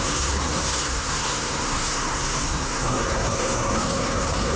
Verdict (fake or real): fake